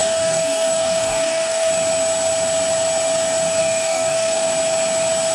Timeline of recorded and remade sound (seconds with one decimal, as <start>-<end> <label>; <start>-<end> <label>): 0.0-1.7 remade; 1.7-3.6 recorded; 3.6-4.5 remade; 4.5-5.3 recorded